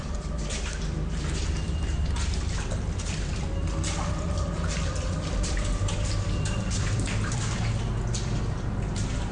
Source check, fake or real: fake